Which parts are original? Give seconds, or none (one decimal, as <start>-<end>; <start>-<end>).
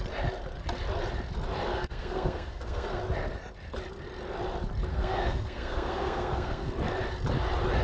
0.0-1.7; 3.0-4.9; 6.7-7.8